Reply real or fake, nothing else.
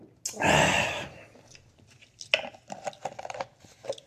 real